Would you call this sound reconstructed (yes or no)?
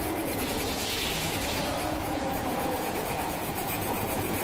yes